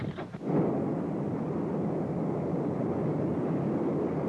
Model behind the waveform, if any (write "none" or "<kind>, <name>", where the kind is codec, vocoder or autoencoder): none